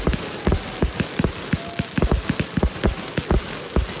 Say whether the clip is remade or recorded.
recorded